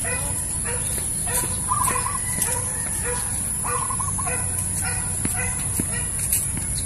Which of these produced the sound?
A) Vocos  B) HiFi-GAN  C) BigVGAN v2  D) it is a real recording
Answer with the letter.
D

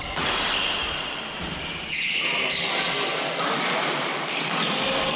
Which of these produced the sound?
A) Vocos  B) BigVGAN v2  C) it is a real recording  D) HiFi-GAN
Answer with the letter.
C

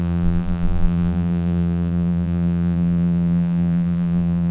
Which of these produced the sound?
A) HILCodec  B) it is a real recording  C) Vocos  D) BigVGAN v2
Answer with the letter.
D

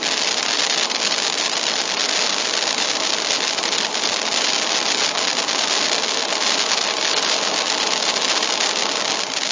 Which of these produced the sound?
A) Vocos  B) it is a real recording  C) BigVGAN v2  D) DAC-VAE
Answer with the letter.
B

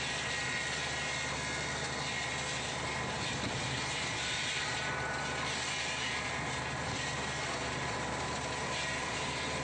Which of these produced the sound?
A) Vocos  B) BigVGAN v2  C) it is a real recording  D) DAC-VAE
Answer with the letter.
B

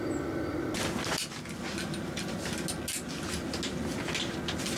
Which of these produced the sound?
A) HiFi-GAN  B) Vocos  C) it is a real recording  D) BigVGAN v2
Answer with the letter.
C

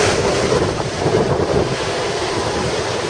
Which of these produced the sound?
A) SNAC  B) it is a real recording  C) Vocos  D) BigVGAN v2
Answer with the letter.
D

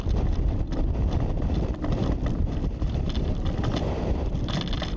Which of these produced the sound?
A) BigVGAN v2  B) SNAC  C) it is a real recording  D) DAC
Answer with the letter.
A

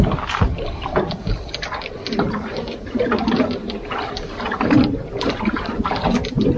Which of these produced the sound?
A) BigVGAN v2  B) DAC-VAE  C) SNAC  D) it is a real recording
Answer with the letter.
D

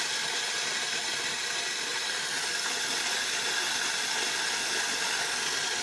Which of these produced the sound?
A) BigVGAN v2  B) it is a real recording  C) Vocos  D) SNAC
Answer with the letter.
B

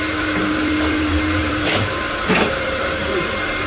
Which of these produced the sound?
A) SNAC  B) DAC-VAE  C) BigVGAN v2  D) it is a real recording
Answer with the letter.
C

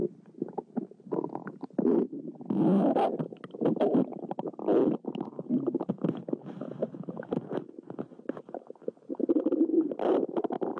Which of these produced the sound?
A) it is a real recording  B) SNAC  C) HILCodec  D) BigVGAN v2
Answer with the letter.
A